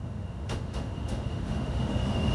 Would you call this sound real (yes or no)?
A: no